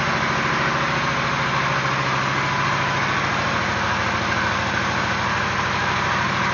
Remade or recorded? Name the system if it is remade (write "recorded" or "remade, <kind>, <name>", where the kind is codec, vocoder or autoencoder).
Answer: recorded